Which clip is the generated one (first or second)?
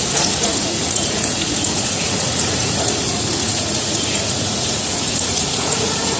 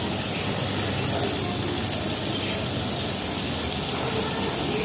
first